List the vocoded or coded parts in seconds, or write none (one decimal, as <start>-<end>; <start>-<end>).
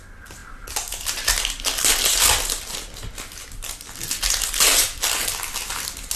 none